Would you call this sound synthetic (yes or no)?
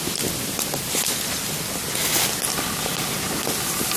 no